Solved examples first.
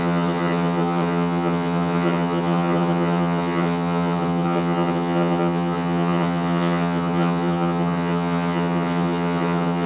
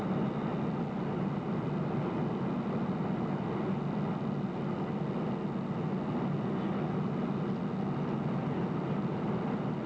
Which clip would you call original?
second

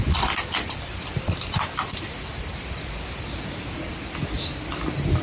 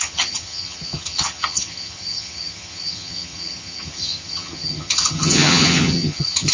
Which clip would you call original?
first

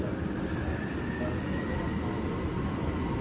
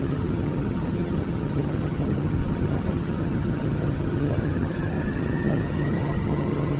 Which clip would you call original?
first